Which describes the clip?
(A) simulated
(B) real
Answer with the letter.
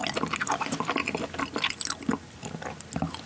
B